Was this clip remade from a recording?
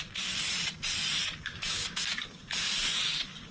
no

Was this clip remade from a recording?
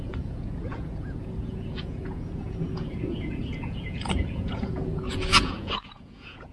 yes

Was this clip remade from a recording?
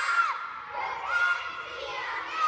no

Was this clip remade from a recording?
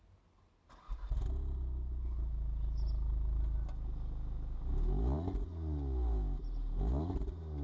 no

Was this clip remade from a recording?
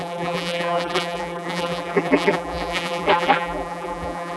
yes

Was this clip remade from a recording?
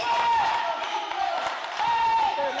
yes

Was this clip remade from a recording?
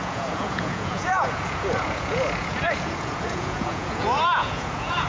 yes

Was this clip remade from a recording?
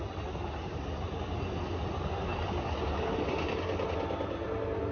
no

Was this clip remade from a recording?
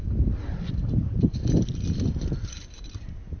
no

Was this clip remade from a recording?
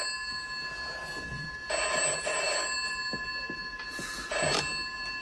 no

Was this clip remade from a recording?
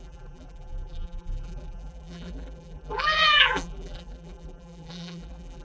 yes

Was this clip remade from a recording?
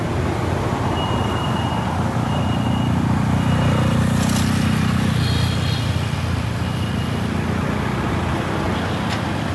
no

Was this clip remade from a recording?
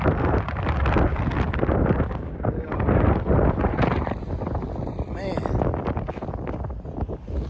no